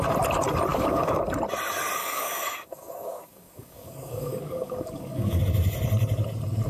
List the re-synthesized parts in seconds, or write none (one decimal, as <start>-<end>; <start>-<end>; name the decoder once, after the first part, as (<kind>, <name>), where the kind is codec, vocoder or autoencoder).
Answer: 0.7-1.2 (codec, DAC); 2.0-5.4